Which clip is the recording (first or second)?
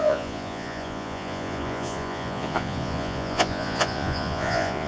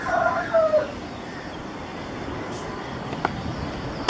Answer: second